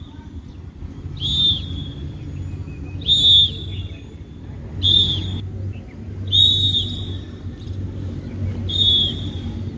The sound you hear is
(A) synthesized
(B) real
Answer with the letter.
B